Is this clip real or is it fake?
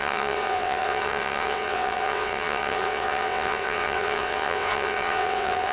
fake